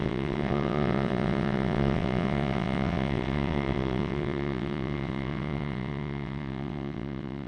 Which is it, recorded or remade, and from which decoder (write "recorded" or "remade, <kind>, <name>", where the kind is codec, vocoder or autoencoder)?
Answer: remade, vocoder, WaveNeXt